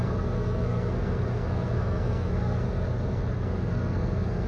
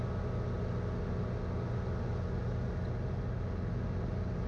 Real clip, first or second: second